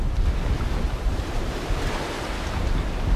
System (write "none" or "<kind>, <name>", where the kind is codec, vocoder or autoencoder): none